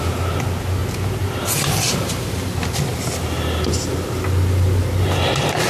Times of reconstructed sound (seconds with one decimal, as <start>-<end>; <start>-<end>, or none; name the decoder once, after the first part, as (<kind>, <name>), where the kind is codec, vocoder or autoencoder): 2.9-4.8 (vocoder, BigVGAN v2)